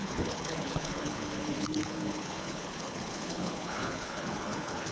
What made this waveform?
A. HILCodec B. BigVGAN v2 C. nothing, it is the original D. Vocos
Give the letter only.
A